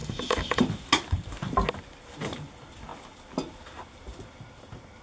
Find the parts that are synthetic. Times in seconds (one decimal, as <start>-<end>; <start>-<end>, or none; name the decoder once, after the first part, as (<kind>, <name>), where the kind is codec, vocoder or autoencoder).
0.0-0.6 (autoencoder, DAC-VAE)